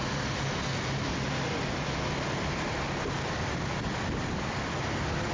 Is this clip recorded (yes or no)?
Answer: yes